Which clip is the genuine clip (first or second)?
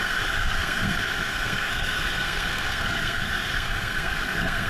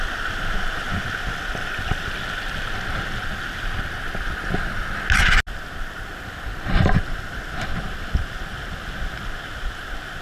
second